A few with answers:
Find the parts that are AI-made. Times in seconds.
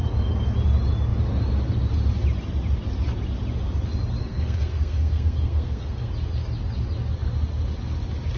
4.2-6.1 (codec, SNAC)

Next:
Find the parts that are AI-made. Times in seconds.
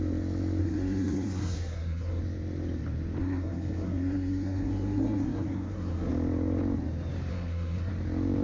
0.6-2.2 (codec, SNAC); 3.2-6.1; 7.3-7.9